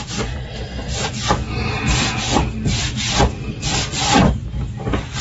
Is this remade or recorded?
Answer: recorded